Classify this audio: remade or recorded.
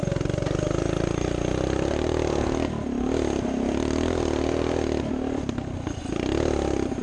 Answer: recorded